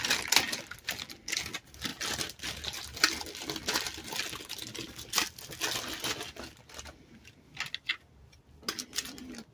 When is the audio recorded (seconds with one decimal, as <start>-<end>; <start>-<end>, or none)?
0.0-9.5